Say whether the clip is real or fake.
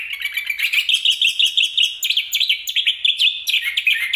real